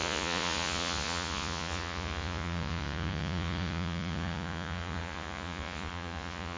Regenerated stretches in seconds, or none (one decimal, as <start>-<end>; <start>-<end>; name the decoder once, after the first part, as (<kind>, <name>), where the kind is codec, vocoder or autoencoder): 0.0-6.6 (vocoder, Vocos)